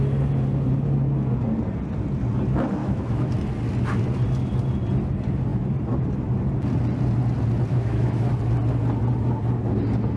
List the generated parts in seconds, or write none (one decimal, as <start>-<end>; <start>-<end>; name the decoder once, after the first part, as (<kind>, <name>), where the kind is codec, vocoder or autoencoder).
2.8-3.3 (autoencoder, DAC-VAE); 7.7-8.3